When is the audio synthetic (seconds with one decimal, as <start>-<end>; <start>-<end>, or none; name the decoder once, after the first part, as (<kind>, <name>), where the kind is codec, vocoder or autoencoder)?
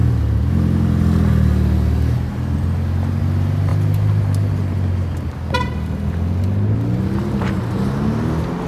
none